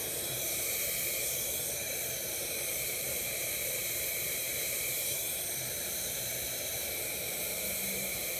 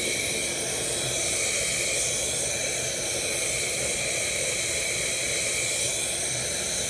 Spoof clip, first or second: first